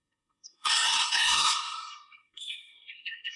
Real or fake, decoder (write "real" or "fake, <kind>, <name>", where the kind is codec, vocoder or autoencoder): fake, codec, SNAC